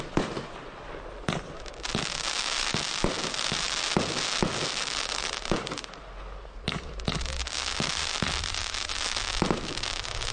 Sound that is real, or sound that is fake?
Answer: real